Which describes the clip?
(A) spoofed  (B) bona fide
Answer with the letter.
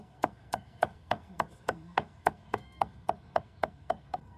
A